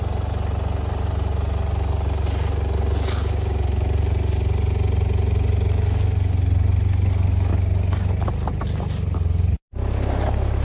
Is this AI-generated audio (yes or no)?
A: no